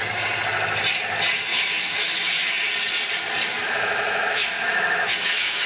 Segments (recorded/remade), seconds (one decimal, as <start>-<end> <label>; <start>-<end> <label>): 0.0-1.5 recorded; 1.5-2.5 remade; 2.5-3.6 recorded; 3.6-5.7 remade